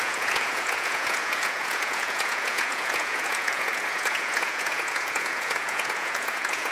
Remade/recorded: remade